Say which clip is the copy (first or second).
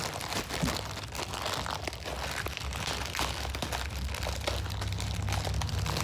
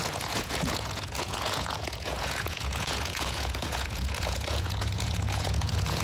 second